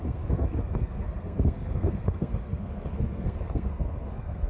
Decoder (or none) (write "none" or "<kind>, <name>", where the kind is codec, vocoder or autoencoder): codec, SNAC